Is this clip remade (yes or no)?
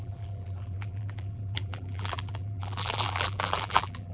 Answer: yes